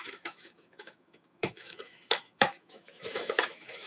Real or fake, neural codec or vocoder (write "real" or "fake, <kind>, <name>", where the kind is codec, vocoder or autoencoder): fake, autoencoder, DAC-VAE